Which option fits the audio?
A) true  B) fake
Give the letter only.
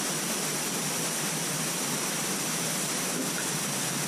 B